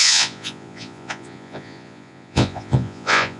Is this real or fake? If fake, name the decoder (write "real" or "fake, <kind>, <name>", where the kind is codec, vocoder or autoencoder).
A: fake, vocoder, Vocos